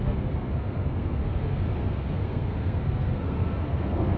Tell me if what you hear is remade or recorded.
remade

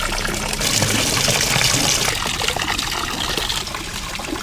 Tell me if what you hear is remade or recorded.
recorded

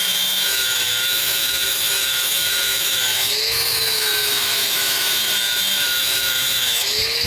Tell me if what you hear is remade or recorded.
remade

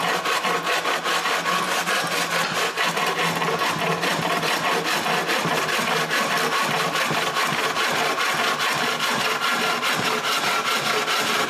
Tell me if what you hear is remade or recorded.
recorded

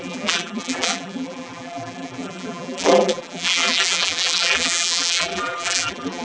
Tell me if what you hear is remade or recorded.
remade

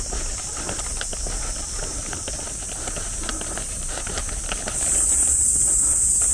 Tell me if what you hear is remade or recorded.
recorded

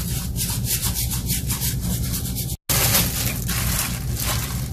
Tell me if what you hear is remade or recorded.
recorded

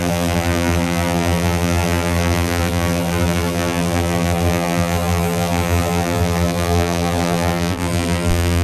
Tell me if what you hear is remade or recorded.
remade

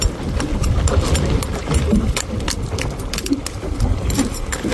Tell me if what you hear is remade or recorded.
recorded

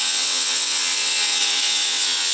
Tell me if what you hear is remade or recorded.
remade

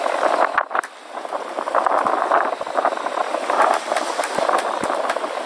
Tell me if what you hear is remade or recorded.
recorded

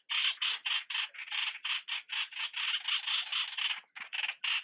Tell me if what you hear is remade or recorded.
recorded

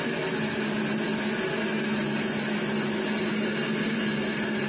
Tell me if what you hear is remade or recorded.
recorded